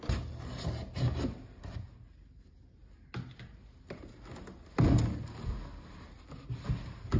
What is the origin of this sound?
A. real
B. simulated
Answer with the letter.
A